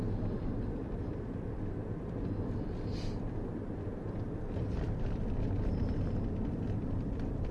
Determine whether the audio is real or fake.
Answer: fake